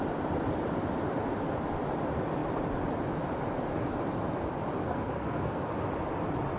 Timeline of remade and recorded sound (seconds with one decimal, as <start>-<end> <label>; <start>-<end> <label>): 0.0-4.8 recorded; 4.8-5.7 remade; 5.7-6.6 recorded